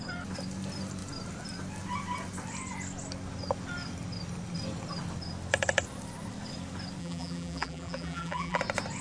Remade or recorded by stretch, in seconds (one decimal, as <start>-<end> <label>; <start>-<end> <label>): 0.0-7.0 recorded; 7.0-8.6 remade; 8.6-9.0 recorded